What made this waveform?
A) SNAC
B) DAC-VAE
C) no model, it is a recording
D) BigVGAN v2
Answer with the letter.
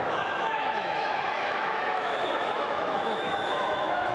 B